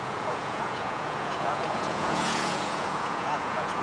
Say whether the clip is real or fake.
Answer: fake